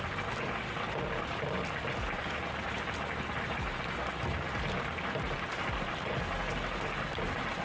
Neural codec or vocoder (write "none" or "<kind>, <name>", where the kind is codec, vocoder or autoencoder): none